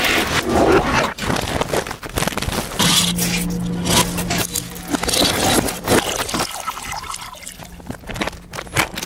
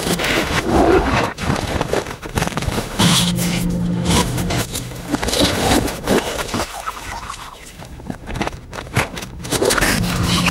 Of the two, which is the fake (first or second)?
second